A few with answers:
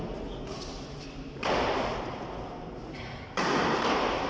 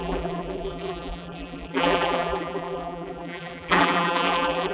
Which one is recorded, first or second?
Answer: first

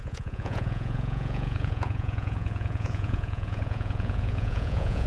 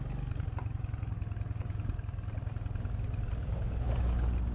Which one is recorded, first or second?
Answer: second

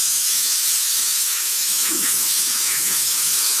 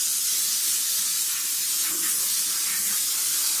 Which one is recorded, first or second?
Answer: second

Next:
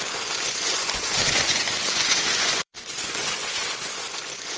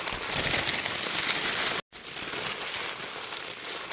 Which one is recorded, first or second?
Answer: second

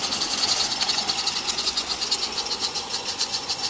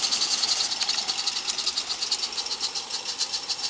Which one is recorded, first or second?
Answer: second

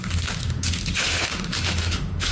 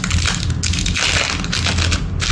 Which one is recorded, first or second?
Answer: second